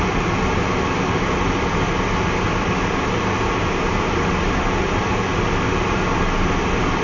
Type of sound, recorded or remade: recorded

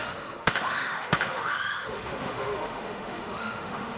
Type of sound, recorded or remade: remade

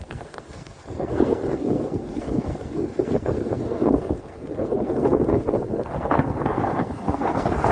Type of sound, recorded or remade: remade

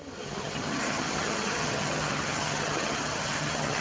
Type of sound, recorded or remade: remade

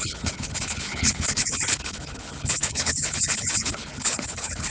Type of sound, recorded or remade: remade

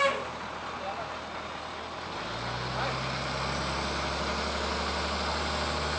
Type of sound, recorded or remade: recorded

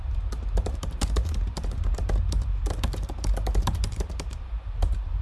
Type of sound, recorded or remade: remade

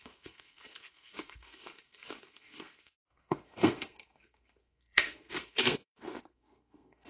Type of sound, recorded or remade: remade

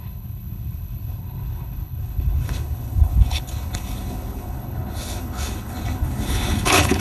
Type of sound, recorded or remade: remade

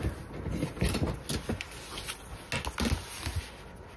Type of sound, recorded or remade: recorded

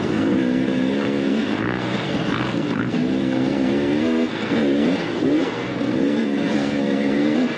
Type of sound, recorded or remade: remade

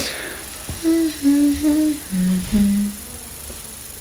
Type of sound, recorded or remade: recorded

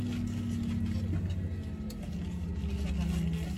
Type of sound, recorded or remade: recorded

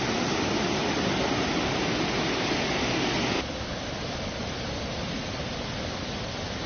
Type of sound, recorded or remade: recorded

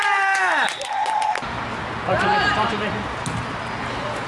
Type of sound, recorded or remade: recorded